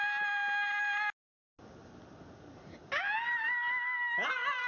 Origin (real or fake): real